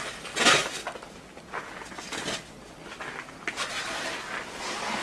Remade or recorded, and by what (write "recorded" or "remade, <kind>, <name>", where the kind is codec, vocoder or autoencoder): recorded